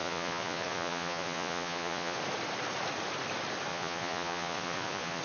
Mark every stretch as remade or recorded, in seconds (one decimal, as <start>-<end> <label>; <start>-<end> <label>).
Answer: 0.0-2.2 remade; 2.2-3.7 recorded; 3.7-5.2 remade

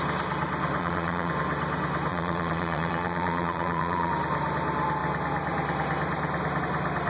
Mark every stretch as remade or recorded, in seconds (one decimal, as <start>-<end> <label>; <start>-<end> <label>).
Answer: 0.0-0.8 recorded; 0.8-1.3 remade; 1.3-2.1 recorded; 2.1-4.1 remade; 4.1-7.1 recorded

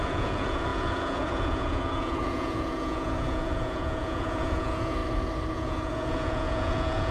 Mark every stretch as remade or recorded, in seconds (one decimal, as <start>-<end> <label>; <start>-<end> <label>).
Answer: 0.0-5.0 remade; 5.0-5.5 recorded; 5.5-7.1 remade

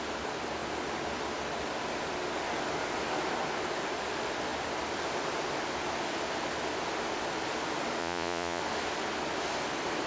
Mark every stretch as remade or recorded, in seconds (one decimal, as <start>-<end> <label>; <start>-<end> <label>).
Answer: 0.0-8.0 recorded; 8.0-8.6 remade; 8.6-10.1 recorded

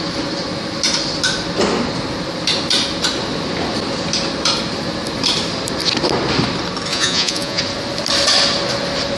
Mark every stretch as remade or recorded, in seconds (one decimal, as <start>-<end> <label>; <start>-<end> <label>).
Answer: 0.0-6.9 recorded; 6.9-7.6 remade; 7.6-9.2 recorded

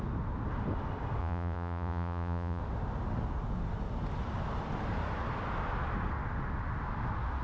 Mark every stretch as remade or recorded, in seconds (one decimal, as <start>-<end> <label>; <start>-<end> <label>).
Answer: 0.0-1.2 recorded; 1.2-2.6 remade; 2.6-7.4 recorded